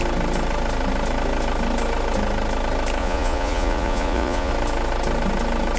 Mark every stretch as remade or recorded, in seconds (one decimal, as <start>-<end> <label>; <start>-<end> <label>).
0.0-3.0 recorded; 3.0-4.5 remade; 4.5-5.8 recorded